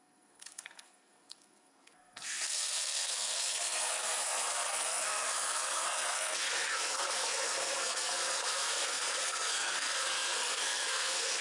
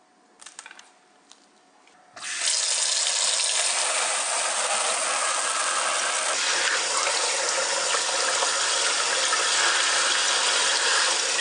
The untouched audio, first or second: second